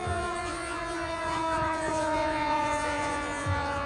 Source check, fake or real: fake